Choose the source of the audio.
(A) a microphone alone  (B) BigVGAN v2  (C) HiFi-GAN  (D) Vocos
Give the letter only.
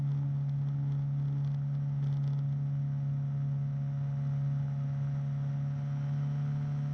A